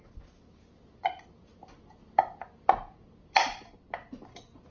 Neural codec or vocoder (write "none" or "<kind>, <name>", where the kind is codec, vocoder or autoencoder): none